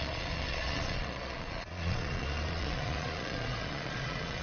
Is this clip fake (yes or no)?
yes